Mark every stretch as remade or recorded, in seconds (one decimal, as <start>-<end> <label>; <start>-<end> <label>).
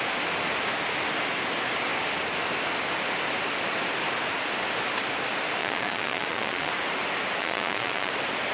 0.0-5.6 recorded; 5.6-6.7 remade; 6.7-7.4 recorded; 7.4-8.1 remade; 8.1-8.5 recorded